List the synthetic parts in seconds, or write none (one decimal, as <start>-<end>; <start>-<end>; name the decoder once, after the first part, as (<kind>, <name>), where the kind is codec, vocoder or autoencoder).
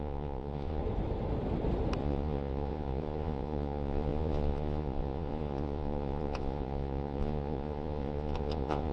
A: 0.0-0.8 (vocoder, Vocos); 2.0-8.9